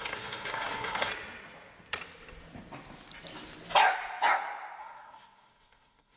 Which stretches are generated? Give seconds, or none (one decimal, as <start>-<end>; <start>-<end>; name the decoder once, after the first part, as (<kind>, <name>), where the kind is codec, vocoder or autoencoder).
0.0-1.1 (codec, SNAC); 4.8-6.2